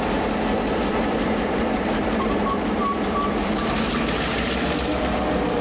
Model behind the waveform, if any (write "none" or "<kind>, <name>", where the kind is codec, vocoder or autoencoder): vocoder, BigVGAN v2